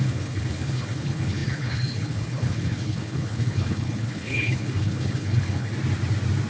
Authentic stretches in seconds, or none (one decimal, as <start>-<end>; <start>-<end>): 5.7-6.5